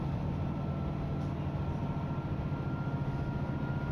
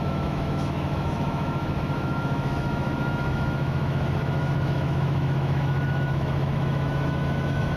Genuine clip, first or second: first